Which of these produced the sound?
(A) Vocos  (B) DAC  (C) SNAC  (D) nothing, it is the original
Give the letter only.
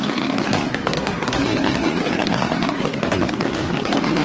C